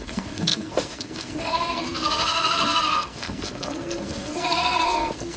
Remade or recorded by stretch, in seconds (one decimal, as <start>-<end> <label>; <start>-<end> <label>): 0.0-5.4 remade